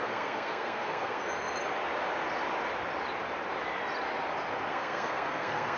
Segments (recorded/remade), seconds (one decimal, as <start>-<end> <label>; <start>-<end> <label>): 0.0-1.2 remade; 1.2-4.7 recorded; 4.7-5.8 remade